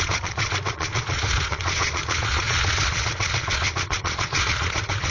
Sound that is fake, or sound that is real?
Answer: fake